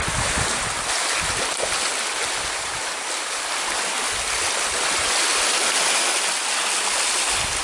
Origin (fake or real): real